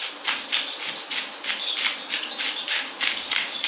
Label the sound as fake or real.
real